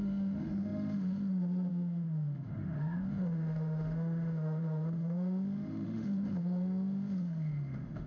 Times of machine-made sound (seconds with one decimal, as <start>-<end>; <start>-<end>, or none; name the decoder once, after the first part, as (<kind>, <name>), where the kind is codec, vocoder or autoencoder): 0.0-8.1 (autoencoder, DAC-VAE)